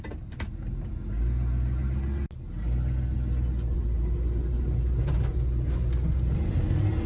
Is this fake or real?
real